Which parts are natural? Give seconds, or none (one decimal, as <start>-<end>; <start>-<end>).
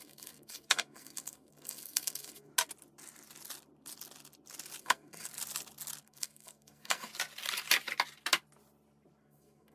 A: 2.5-4.8; 5.3-6.0; 7.1-9.2